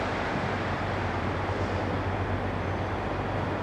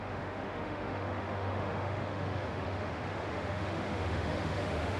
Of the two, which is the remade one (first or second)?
second